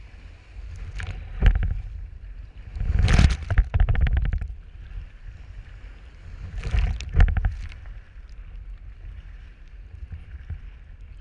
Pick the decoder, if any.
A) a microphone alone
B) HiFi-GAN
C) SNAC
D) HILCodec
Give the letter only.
A